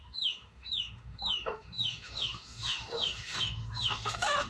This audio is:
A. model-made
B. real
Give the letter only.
A